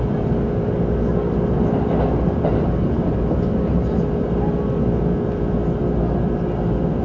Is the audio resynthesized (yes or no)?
no